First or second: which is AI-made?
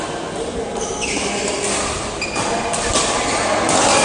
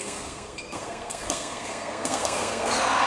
second